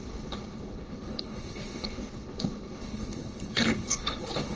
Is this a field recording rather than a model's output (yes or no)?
no